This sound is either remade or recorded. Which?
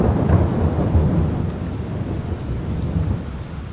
recorded